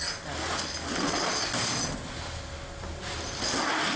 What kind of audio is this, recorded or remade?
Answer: recorded